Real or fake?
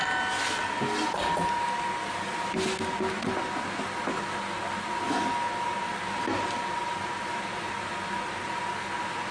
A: real